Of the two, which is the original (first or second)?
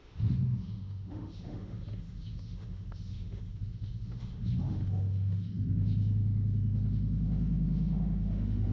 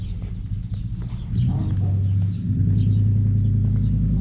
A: second